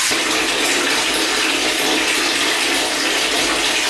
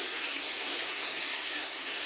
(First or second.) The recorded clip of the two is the first